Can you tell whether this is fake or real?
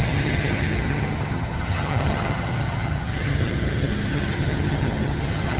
fake